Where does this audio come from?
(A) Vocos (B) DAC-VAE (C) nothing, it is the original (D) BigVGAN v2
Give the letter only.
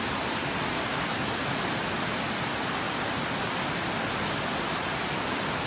C